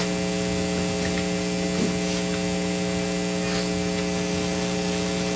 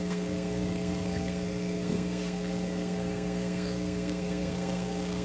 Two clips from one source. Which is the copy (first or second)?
second